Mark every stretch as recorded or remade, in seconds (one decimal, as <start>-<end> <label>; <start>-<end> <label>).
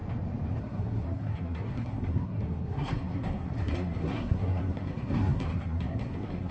0.0-0.6 recorded; 0.6-6.5 remade